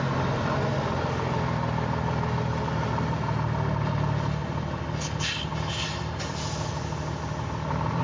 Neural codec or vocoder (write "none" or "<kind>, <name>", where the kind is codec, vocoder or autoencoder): none